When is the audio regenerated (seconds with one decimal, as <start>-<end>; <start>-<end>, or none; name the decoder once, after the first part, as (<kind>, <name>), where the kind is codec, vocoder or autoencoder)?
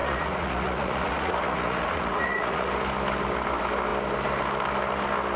0.0-2.7 (vocoder, Vocos)